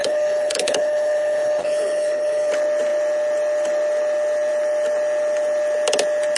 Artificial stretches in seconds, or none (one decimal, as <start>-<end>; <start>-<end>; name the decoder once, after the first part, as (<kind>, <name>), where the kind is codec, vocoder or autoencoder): 0.0-2.5 (codec, HILCodec)

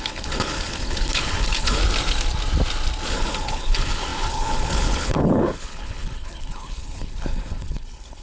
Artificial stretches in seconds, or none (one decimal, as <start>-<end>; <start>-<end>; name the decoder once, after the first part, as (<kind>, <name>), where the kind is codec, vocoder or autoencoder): 0.0-1.8 (codec, HILCodec); 3.1-8.2